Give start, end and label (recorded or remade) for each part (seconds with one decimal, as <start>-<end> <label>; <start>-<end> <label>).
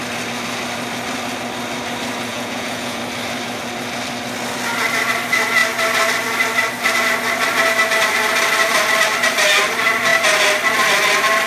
0.0-2.3 recorded; 2.3-3.0 remade; 3.0-11.5 recorded